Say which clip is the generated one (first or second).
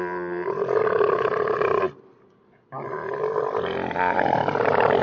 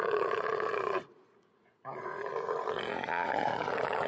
second